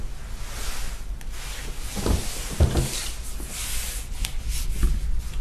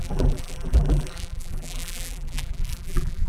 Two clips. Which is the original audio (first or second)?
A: first